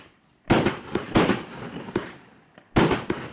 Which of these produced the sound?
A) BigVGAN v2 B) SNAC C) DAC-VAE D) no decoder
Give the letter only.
A